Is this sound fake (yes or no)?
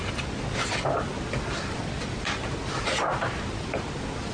no